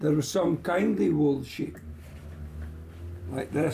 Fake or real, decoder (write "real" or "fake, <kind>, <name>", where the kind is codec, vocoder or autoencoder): real